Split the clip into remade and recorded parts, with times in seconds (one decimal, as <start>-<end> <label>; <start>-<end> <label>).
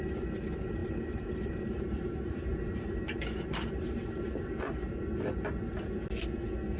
0.0-0.8 recorded; 0.8-4.9 remade; 4.9-6.8 recorded